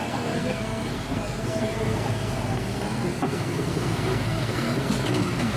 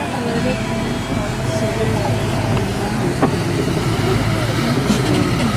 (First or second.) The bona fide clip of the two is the second